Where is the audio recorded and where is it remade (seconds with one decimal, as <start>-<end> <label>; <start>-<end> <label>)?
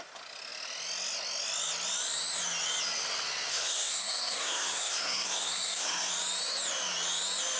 0.0-3.5 recorded; 3.5-6.1 remade; 6.1-7.6 recorded